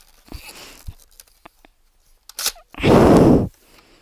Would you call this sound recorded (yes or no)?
yes